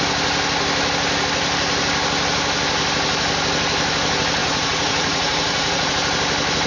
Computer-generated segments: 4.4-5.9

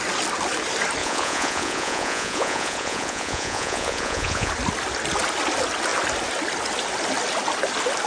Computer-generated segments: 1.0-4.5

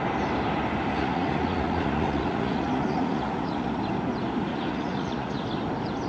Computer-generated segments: 0.9-3.8; 4.5-5.4

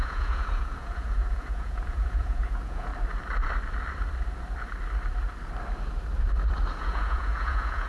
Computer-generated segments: 0.0-2.9; 6.7-7.9